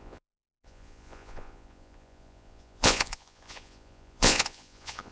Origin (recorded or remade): remade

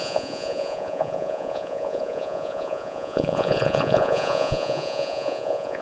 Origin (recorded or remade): remade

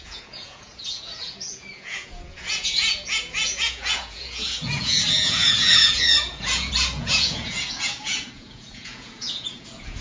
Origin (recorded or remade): remade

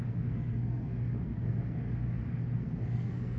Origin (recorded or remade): remade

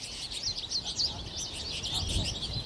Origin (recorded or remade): recorded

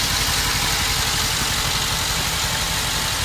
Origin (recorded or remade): recorded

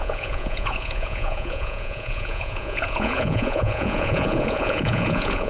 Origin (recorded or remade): remade